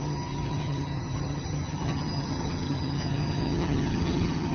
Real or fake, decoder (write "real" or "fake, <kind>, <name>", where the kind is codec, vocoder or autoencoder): fake, vocoder, HiFi-GAN